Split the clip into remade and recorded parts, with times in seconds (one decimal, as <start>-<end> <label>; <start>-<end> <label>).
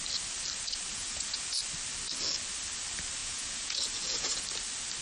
0.0-0.9 recorded; 0.9-1.5 remade; 1.5-3.2 recorded; 3.2-4.4 remade; 4.4-5.0 recorded